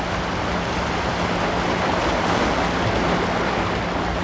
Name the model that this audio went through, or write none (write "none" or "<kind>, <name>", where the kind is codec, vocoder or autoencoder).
none